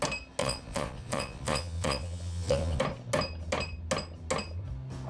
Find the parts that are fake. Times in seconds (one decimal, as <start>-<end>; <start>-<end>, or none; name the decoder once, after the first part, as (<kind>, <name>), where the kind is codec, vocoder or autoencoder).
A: 0.4-2.8 (vocoder, Vocos)